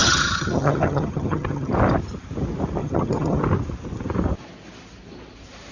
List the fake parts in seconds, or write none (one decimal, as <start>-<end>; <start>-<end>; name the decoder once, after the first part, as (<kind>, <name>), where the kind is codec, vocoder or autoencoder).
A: 0.0-1.7 (vocoder, HiFi-GAN); 2.8-3.4